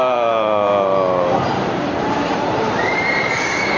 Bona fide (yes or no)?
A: no